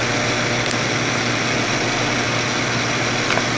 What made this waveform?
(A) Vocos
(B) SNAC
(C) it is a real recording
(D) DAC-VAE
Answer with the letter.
C